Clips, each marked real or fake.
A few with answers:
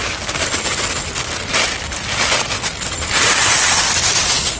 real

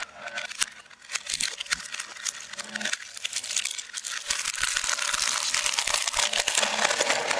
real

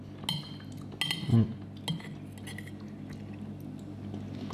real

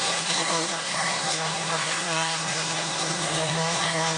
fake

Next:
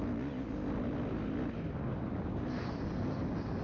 real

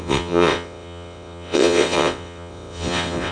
fake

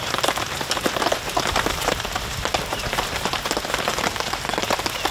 fake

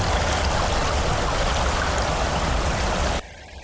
real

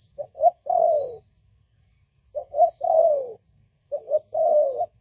fake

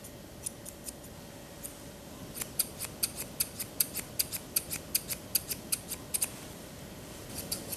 fake